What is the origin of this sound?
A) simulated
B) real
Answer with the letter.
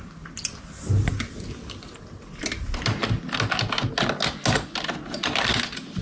B